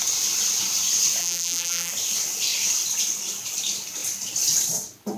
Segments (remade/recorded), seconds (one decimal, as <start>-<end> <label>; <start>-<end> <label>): 0.0-1.2 recorded; 1.2-1.9 remade; 1.9-5.2 recorded